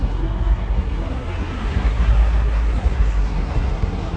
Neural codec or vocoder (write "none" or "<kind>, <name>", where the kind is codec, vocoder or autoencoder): codec, SNAC